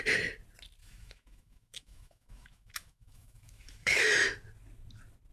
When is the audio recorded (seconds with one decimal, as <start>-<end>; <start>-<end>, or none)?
0.0-0.8; 4.0-5.3